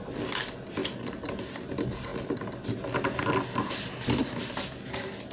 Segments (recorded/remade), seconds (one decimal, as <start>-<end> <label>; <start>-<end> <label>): 0.0-0.8 recorded; 0.8-1.7 remade; 1.7-5.3 recorded